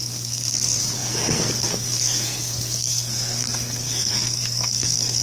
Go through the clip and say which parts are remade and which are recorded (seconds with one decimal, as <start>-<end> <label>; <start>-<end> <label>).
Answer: 0.0-5.2 remade